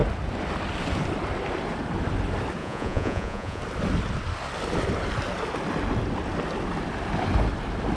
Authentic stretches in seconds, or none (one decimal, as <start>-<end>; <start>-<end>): 0.0-2.6; 3.6-8.0